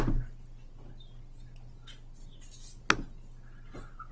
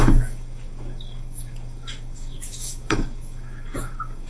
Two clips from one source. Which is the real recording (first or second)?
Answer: first